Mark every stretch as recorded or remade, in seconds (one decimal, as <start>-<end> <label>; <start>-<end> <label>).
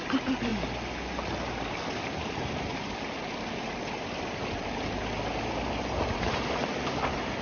0.0-7.4 recorded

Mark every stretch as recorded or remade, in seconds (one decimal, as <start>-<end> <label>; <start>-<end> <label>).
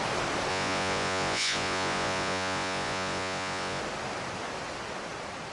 0.0-0.5 recorded; 0.5-3.8 remade; 3.8-5.5 recorded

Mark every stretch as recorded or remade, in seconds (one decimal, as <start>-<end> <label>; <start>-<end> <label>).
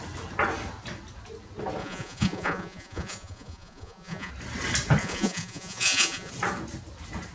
0.0-1.8 recorded; 1.8-4.3 remade; 4.3-5.0 recorded; 5.0-6.3 remade; 6.3-7.3 recorded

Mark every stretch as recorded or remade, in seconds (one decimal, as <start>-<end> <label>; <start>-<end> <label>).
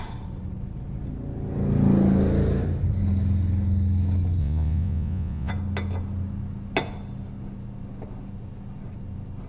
0.0-4.4 recorded; 4.4-5.5 remade; 5.5-9.5 recorded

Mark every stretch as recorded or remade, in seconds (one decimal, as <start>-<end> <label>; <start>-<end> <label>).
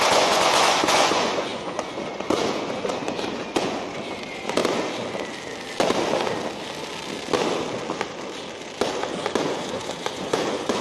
0.0-4.6 remade; 4.6-9.4 recorded; 9.4-10.8 remade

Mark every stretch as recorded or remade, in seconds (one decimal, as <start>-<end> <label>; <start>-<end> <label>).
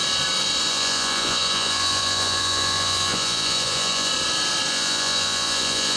0.0-0.7 recorded; 0.7-4.1 remade; 4.1-4.7 recorded; 4.7-6.0 remade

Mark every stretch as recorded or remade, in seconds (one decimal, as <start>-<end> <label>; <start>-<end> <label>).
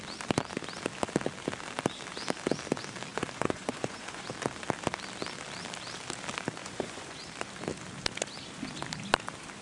0.0-3.1 recorded; 3.1-4.3 remade; 4.3-6.6 recorded; 6.6-7.2 remade; 7.2-9.6 recorded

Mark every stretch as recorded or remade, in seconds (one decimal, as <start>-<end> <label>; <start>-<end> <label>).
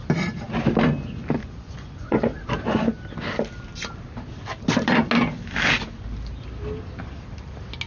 0.0-1.4 recorded; 1.4-2.8 remade; 2.8-7.9 recorded